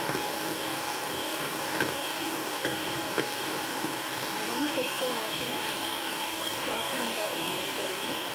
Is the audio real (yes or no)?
no